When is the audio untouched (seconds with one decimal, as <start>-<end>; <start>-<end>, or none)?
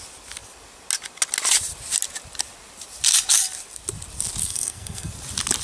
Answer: 0.0-4.4; 5.1-5.6